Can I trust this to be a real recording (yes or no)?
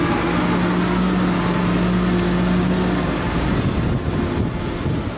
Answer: yes